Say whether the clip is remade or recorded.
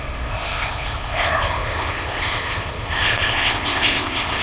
remade